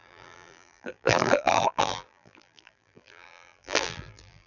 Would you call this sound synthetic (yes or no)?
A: yes